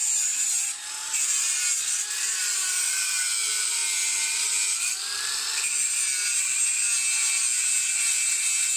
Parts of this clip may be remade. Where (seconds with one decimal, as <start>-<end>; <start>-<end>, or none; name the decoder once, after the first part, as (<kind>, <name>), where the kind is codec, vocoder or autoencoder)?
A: 2.4-3.2 (vocoder, BigVGAN v2)